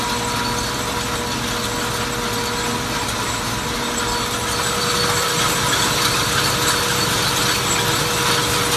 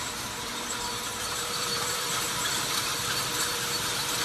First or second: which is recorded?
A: first